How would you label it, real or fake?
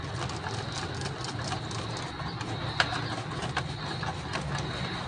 real